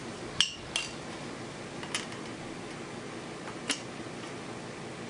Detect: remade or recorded recorded